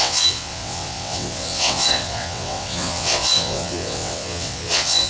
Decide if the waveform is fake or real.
fake